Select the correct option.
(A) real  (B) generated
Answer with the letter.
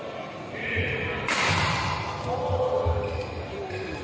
A